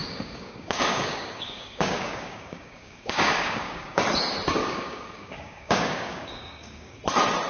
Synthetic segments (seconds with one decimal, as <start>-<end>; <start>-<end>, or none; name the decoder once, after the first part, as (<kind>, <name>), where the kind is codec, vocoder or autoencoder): 0.0-4.0 (codec, DAC); 4.6-7.0